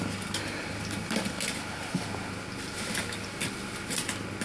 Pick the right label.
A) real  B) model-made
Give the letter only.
A